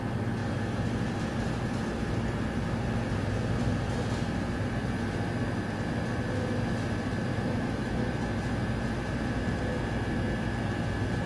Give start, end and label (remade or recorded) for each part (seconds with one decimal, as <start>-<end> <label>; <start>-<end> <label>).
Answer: 0.0-7.3 recorded; 7.3-8.1 remade; 8.1-11.3 recorded